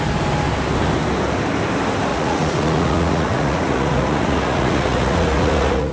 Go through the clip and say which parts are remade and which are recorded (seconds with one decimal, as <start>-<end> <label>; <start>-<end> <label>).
0.0-2.1 recorded; 2.1-5.9 remade